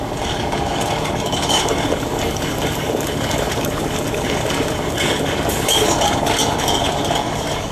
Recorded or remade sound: remade